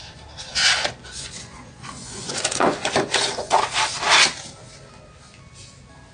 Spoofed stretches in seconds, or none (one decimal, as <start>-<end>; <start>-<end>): 0.5-3.6